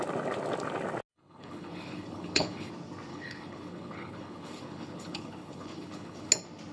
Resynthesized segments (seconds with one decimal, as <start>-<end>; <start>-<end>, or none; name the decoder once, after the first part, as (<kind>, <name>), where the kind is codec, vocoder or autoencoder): 1.1-2.7 (codec, HILCodec); 3.1-6.3